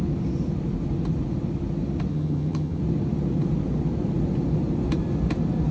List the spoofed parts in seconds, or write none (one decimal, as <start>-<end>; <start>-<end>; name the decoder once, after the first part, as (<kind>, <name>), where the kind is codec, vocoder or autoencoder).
2.1-2.8 (vocoder, HiFi-GAN)